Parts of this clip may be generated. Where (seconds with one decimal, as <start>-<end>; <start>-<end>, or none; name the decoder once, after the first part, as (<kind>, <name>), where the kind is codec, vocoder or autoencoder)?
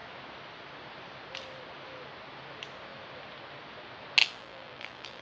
4.2-5.2 (vocoder, BigVGAN v2)